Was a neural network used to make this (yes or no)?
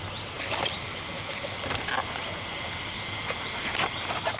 no